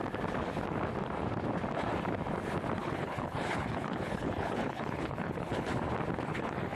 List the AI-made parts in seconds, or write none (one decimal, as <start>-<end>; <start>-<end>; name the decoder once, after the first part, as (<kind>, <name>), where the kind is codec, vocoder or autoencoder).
2.8-5.8 (codec, HILCodec); 6.3-6.8